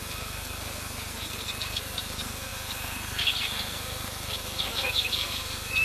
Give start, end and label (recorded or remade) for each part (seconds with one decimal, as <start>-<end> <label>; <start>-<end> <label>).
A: 0.0-5.8 remade